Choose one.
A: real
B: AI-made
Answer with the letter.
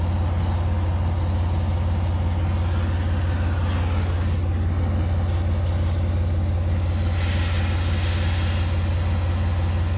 A